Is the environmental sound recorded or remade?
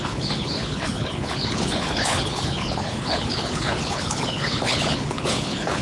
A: remade